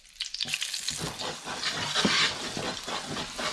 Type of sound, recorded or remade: recorded